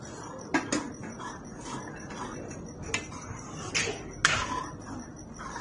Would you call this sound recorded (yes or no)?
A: yes